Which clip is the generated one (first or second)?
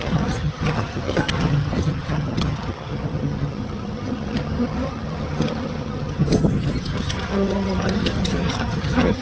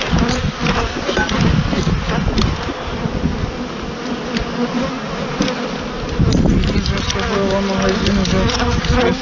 first